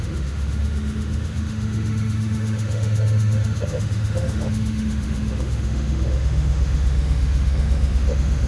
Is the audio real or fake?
fake